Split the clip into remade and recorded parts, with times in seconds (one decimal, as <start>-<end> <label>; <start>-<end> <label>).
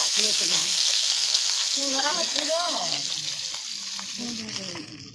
0.0-3.1 remade; 3.1-5.1 recorded